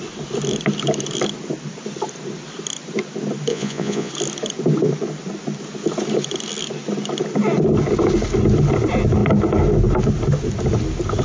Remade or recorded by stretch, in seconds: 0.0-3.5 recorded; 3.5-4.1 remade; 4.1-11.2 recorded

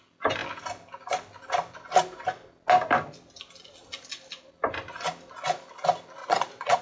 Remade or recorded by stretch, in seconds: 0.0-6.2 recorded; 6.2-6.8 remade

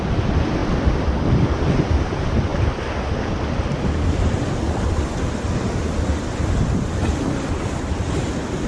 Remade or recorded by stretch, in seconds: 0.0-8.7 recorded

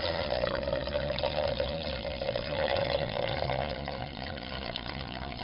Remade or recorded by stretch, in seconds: 0.0-5.4 remade